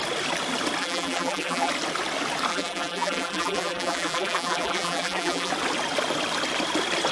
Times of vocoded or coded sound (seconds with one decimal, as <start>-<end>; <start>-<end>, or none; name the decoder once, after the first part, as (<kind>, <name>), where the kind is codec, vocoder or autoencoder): 0.8-1.7 (vocoder, BigVGAN v2); 2.5-5.5